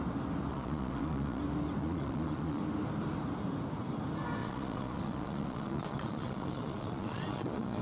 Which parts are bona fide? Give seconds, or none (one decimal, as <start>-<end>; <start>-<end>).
0.0-0.5; 1.4-1.8; 2.6-4.4